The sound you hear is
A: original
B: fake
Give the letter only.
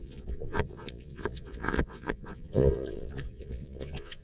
B